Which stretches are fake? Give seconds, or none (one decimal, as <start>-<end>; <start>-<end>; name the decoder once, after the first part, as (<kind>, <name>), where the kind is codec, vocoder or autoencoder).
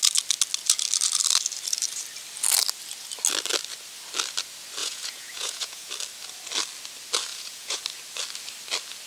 4.8-5.9 (vocoder, Vocos); 7.3-7.8